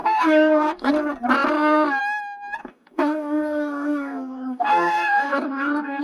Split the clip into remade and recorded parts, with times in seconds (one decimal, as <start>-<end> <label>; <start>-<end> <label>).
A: 0.0-0.9 remade; 0.9-2.6 recorded; 2.6-6.0 remade